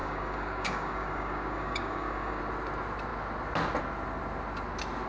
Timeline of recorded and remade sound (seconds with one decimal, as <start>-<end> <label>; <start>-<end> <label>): 0.0-2.4 remade; 2.4-5.1 recorded